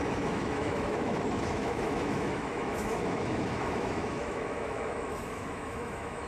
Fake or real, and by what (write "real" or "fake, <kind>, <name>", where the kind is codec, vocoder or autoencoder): fake, autoencoder, DAC-VAE